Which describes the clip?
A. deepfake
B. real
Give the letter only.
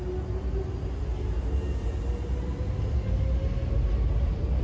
B